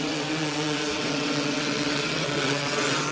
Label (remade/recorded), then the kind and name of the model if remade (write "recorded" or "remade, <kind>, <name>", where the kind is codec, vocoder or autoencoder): remade, vocoder, WaveNeXt